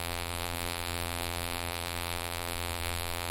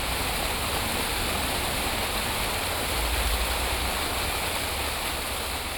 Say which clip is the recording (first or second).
second